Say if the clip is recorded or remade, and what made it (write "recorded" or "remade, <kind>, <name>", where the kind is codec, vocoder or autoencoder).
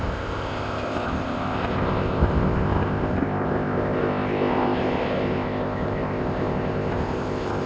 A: remade, codec, ZipCodec